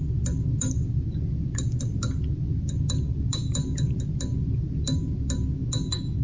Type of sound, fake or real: real